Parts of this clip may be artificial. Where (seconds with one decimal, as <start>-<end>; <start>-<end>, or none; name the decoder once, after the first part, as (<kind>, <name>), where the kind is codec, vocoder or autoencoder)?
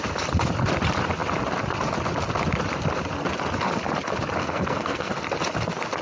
4.4-5.1 (codec, SNAC)